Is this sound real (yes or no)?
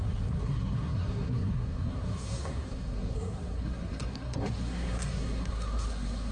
no